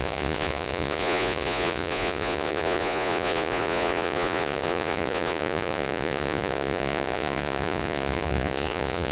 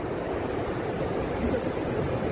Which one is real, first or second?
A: second